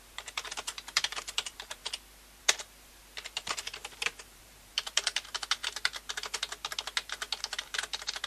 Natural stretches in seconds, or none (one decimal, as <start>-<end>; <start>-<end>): 1.8-2.4; 5.6-7.4

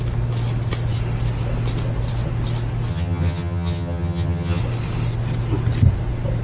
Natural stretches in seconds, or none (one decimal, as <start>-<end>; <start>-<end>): 0.0-2.9; 4.6-6.4

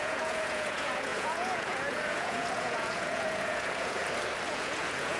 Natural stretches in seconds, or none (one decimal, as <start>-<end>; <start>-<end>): 4.0-4.5

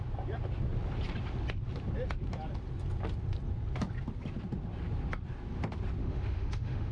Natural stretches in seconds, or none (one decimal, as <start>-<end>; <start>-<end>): 0.0-6.0

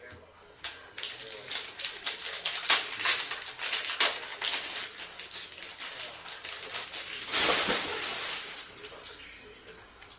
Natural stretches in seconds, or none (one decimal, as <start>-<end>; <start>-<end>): 0.0-10.2

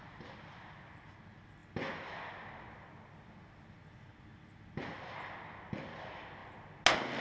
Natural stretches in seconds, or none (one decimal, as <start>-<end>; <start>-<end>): 0.0-7.2

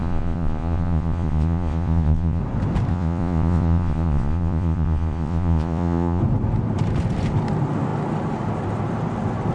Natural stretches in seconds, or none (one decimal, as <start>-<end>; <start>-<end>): 2.4-2.9; 6.2-9.5